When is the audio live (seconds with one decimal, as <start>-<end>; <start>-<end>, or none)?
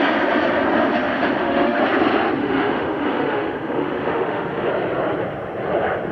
0.0-0.9; 1.8-2.4; 4.7-6.1